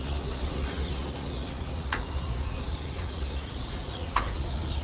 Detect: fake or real fake